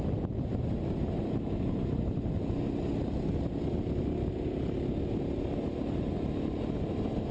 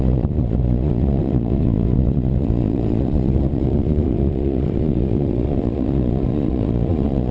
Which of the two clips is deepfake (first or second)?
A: second